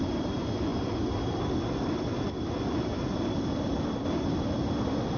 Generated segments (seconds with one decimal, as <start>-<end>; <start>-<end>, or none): none